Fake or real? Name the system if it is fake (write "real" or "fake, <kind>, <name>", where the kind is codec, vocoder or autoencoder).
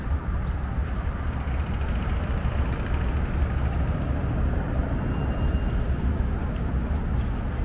real